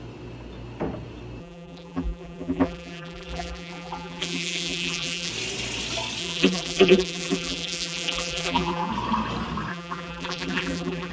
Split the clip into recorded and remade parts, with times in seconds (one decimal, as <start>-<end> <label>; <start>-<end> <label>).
0.0-1.4 recorded; 1.4-5.3 remade; 5.3-6.2 recorded; 6.2-8.9 remade; 8.9-9.7 recorded; 9.7-11.1 remade